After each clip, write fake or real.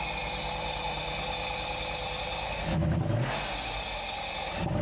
real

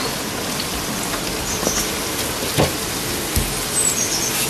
real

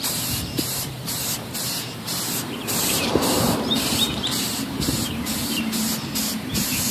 fake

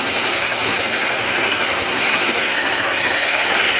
fake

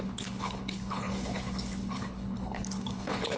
fake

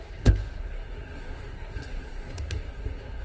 fake